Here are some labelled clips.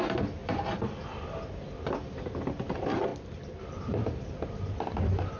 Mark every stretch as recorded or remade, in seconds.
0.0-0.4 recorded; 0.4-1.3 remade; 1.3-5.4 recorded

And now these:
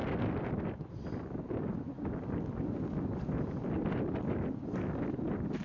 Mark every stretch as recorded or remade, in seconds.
0.0-5.6 recorded

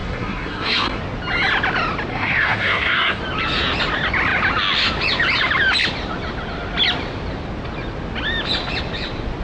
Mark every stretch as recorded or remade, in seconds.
0.0-1.0 remade; 1.0-2.1 recorded; 2.1-3.2 remade; 3.2-9.4 recorded

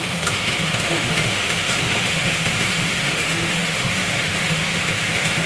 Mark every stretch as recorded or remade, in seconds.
0.0-5.5 remade

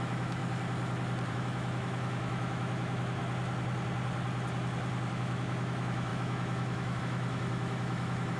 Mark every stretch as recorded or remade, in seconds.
0.0-0.4 remade; 0.4-1.3 recorded; 1.3-3.2 remade; 3.2-5.1 recorded; 5.1-8.4 remade

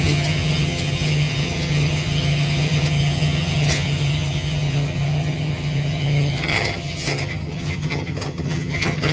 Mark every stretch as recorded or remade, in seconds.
0.0-9.1 remade

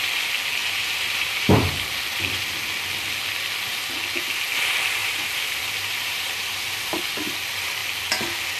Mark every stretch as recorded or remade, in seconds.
0.0-0.6 recorded; 0.6-2.0 remade; 2.0-5.0 recorded; 5.0-7.0 remade; 7.0-8.6 recorded